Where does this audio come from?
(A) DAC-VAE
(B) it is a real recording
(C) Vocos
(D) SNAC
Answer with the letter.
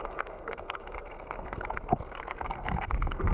D